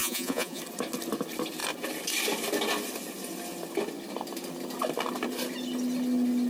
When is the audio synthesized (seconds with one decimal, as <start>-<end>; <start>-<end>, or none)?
0.0-0.6